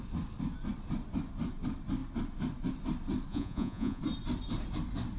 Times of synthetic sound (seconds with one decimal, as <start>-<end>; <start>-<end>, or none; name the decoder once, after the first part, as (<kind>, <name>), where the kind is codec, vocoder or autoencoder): 3.3-4.0 (vocoder, Vocos)